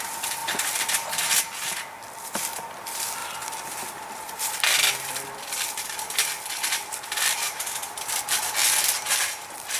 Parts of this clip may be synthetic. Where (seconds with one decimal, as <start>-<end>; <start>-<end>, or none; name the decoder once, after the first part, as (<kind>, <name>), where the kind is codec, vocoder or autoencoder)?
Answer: 3.2-8.2 (vocoder, BigVGAN v2)